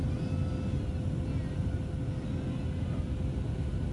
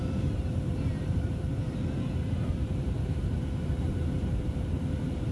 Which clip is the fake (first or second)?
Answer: second